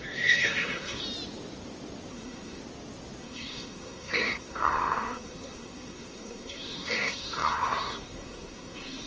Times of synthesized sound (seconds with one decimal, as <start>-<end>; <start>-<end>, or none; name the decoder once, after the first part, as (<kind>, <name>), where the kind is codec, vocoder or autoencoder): 0.0-1.0 (codec, SNAC); 2.1-2.6; 3.2-9.1